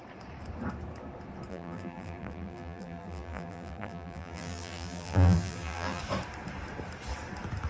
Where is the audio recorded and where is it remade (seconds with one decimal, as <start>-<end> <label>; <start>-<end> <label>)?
0.0-1.5 recorded; 1.5-6.0 remade; 6.0-7.7 recorded